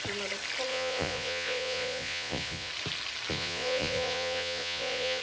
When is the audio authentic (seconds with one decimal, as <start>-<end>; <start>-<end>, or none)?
0.0-0.7; 2.7-3.3